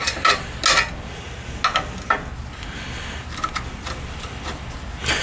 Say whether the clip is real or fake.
real